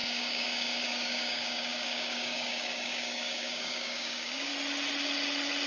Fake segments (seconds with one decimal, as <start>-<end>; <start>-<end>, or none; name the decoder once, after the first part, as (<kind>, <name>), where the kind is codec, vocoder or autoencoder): 0.0-4.5 (codec, DAC)